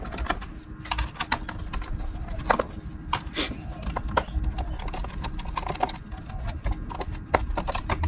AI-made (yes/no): no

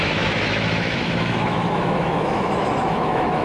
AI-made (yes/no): yes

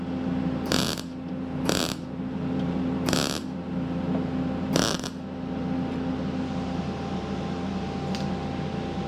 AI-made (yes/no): no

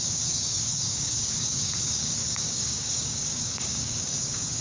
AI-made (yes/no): yes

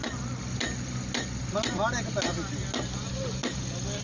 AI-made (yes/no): no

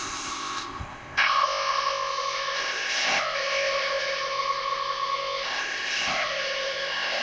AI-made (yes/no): yes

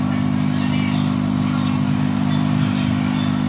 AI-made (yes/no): no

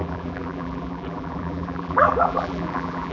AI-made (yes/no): yes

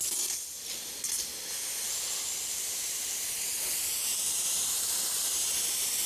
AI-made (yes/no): no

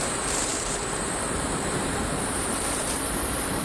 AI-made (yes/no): yes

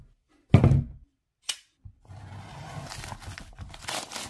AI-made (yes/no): no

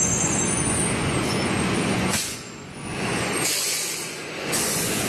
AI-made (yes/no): yes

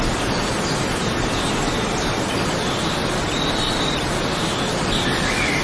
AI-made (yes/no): no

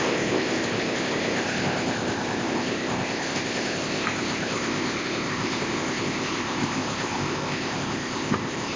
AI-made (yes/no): yes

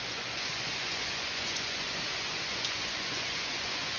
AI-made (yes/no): yes